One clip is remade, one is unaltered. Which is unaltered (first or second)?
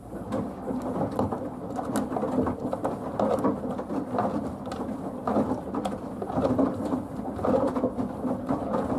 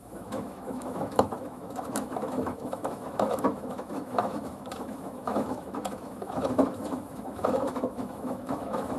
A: first